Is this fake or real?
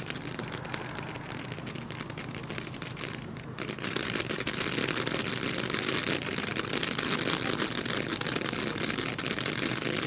real